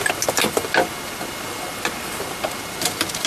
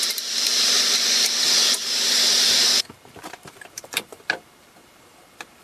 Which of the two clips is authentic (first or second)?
first